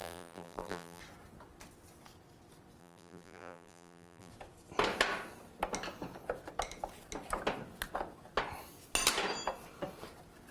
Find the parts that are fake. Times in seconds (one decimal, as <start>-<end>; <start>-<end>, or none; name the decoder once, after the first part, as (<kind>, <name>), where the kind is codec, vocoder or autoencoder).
0.0-1.0 (vocoder, BigVGAN v2); 2.8-4.3